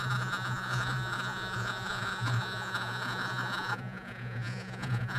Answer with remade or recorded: remade